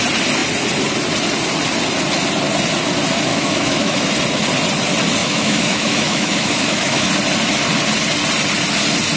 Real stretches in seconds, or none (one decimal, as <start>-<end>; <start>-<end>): 0.0-3.3; 4.0-5.2; 7.1-9.2